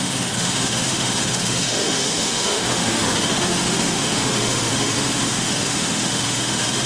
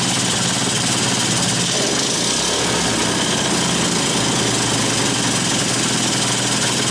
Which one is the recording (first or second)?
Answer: second